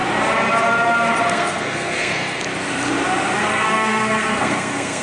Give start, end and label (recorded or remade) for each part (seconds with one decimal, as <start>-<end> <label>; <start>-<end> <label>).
0.0-1.3 recorded; 1.3-2.4 remade; 2.4-3.4 recorded; 3.4-5.0 remade